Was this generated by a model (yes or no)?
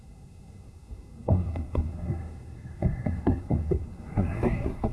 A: yes